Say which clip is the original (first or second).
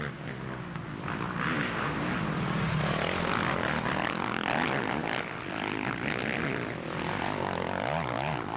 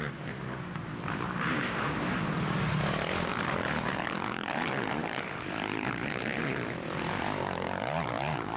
first